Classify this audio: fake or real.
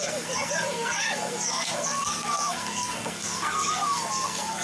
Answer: fake